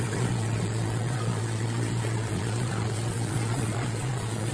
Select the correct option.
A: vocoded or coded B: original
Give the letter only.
A